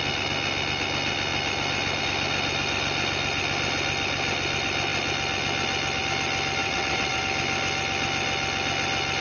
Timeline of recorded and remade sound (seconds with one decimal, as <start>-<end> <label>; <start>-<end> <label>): 0.0-6.6 recorded; 6.6-7.2 remade; 7.2-9.2 recorded